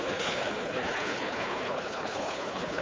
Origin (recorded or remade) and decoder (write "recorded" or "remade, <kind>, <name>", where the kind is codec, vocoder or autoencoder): remade, codec, HILCodec